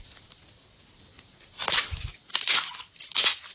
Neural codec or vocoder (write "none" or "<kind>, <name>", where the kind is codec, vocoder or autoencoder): none